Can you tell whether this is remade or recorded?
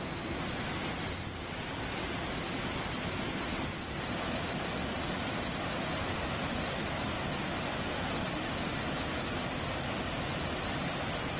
recorded